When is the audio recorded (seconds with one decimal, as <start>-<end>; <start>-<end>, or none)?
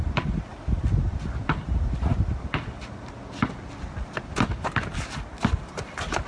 0.0-6.3